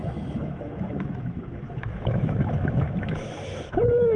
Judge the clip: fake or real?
fake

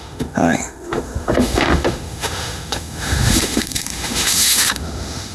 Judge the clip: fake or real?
fake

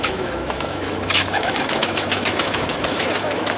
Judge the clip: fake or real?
fake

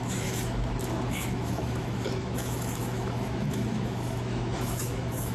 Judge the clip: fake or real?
fake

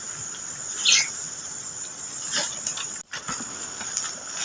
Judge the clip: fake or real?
real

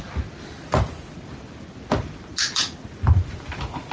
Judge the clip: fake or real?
real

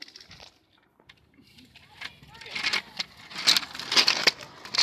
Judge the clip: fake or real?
real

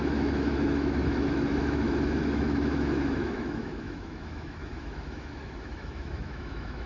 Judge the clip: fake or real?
fake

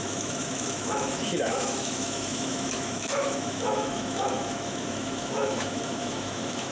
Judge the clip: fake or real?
fake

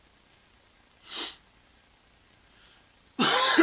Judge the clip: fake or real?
real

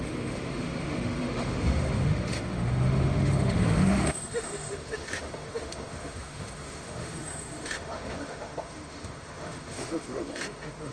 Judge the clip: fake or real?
fake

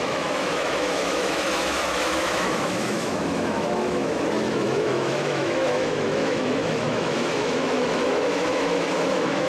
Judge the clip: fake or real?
fake